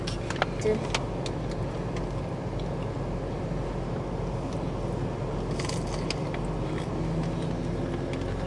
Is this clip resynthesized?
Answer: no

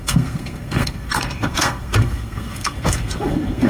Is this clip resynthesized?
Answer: yes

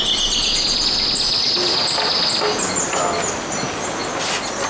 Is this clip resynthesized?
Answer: no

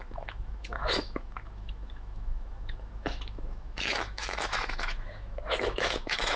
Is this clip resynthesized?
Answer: yes